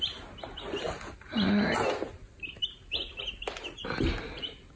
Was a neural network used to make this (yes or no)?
no